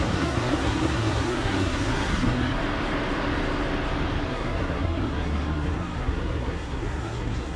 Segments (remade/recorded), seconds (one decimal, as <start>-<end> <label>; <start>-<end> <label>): 0.0-2.6 remade; 2.6-4.3 recorded; 4.3-7.6 remade